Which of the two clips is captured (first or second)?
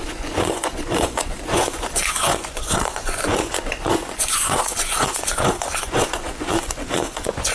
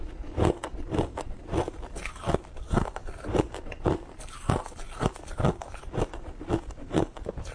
second